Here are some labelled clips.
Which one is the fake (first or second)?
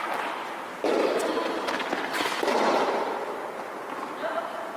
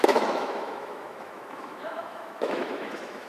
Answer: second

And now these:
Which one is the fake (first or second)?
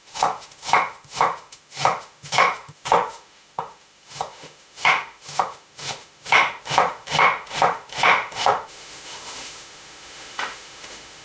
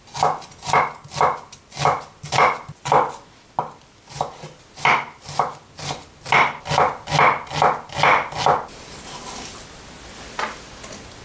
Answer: first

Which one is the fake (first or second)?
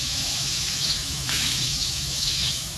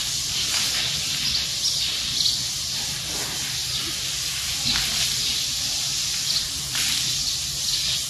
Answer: first